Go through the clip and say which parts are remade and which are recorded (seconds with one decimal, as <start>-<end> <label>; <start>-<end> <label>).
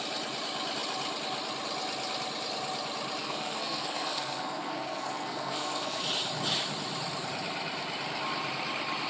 0.0-3.2 recorded; 3.2-6.0 remade; 6.0-9.1 recorded